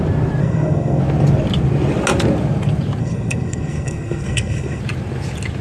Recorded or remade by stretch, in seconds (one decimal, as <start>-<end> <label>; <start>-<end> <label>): 0.0-0.4 recorded; 0.4-1.0 remade; 1.0-3.0 recorded; 3.0-4.8 remade; 4.8-5.6 recorded